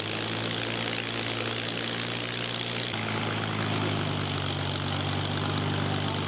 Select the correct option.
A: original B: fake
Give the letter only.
A